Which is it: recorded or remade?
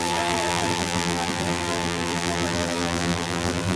remade